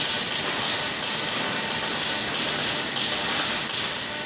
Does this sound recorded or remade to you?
recorded